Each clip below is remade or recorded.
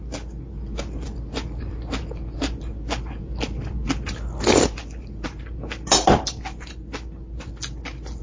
recorded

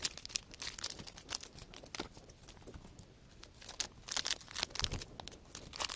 recorded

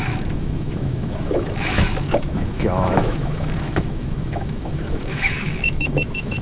remade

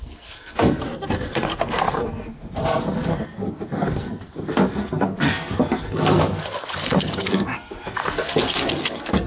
remade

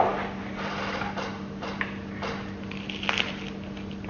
recorded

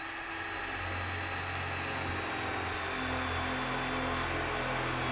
recorded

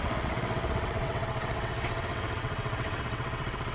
remade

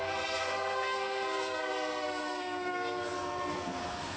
remade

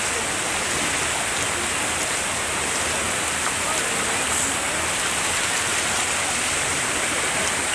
recorded